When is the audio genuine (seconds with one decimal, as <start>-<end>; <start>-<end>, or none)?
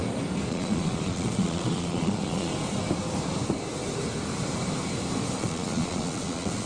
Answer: 0.0-0.5; 2.5-5.4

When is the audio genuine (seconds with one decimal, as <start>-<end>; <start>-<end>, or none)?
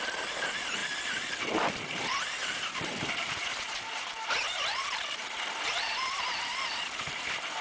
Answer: 0.8-1.4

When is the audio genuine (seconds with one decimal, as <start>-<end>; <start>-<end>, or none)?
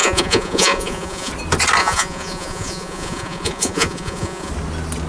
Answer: 1.3-1.8; 4.5-5.1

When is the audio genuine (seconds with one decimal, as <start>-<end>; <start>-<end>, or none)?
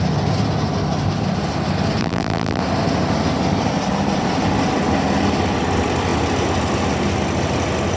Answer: 0.0-2.0; 2.6-8.0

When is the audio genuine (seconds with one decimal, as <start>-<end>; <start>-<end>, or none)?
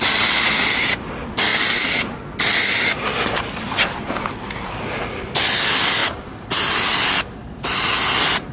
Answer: 0.0-8.5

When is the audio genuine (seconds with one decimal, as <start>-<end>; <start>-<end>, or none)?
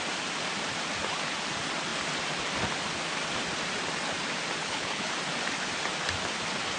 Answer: 0.0-4.6; 5.1-6.8